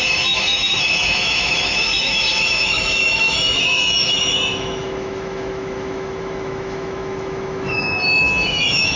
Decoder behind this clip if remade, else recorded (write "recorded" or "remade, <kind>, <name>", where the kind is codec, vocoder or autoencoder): remade, autoencoder, DAC-VAE